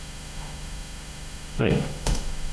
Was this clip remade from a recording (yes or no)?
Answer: yes